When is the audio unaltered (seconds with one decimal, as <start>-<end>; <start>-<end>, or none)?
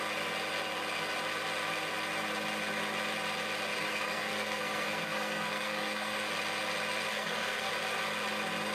0.0-3.7; 6.3-7.1; 7.7-8.7